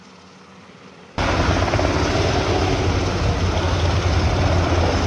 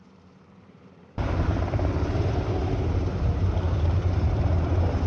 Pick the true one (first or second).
first